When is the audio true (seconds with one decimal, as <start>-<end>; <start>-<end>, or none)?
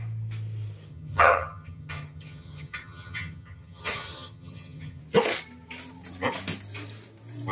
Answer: 0.0-0.9; 5.0-7.5